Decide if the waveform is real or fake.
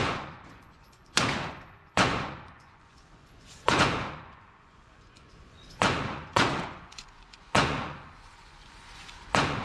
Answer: fake